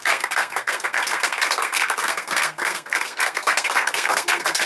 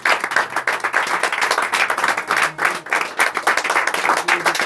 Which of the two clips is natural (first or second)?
second